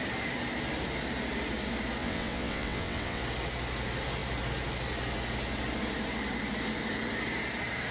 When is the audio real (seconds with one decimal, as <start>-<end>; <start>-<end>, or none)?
0.0-2.0; 3.2-7.9